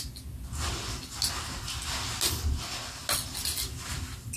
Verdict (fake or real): real